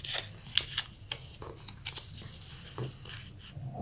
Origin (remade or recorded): recorded